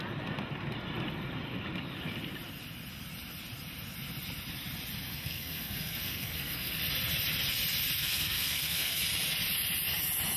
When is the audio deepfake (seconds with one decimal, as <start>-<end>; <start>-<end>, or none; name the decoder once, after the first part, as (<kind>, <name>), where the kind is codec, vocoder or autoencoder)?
5.1-6.8 (codec, SNAC); 8.0-9.0